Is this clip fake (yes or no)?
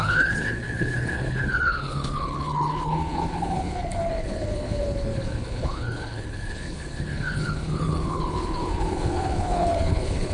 yes